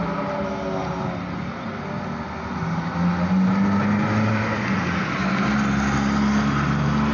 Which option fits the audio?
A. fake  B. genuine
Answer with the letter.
B